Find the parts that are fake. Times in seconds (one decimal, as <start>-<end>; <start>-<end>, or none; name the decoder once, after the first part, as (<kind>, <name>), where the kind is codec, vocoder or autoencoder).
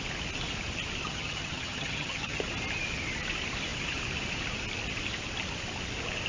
1.0-2.4 (vocoder, HiFi-GAN)